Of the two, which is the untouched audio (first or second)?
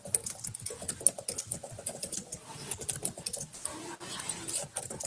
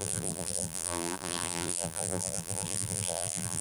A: first